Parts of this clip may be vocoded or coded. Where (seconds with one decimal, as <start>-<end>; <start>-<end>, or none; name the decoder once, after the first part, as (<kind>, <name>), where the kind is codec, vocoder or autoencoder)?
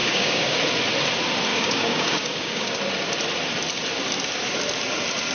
0.0-0.6 (codec, DAC); 1.5-2.8